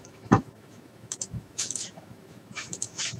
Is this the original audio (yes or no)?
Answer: no